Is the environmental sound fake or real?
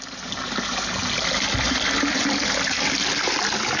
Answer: real